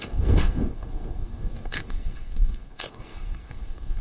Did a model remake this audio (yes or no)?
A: yes